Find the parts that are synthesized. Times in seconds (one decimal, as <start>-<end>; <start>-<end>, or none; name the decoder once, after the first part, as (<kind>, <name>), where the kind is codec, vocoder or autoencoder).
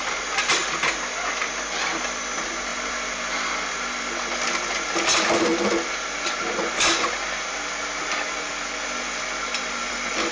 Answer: none